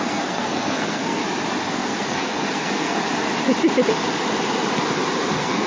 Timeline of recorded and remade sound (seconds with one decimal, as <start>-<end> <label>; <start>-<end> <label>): 0.0-1.2 remade; 1.2-1.7 recorded; 1.7-3.0 remade; 3.0-5.3 recorded; 5.3-5.7 remade